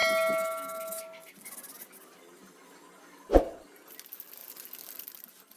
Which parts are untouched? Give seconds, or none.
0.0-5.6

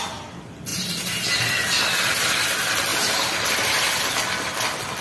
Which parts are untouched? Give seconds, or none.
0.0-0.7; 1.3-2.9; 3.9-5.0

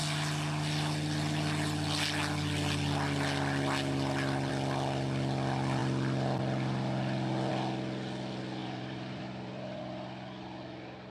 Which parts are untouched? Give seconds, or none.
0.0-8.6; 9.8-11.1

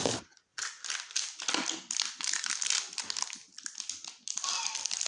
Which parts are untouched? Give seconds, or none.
0.0-0.5; 2.8-5.1